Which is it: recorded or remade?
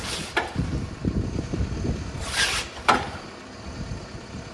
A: remade